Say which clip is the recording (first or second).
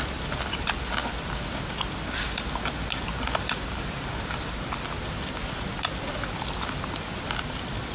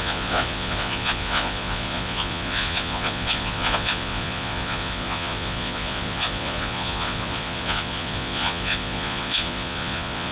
first